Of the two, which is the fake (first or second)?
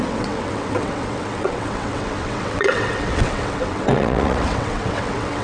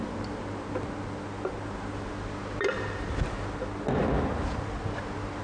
first